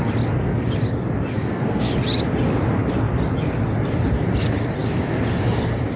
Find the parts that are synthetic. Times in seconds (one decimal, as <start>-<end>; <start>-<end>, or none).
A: 1.3-1.9